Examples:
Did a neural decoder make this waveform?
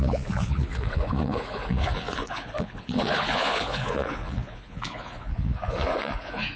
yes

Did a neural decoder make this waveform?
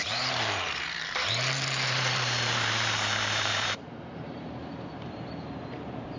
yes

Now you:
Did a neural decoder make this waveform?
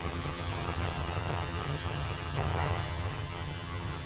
yes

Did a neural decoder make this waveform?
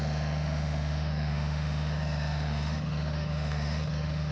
yes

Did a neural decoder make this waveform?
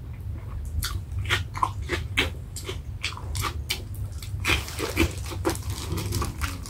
no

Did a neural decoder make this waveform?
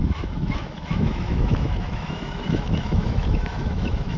yes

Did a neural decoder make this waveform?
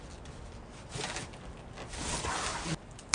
no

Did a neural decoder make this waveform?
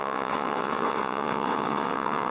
yes